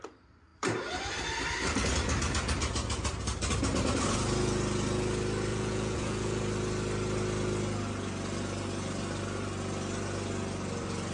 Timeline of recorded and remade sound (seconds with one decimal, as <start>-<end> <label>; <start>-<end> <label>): 0.0-5.5 recorded; 5.5-6.4 remade; 6.4-11.1 recorded